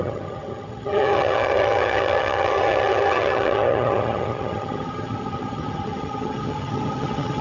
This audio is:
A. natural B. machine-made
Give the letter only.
B